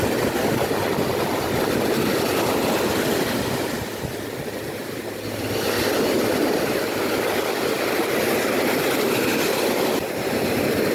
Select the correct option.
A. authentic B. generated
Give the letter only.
A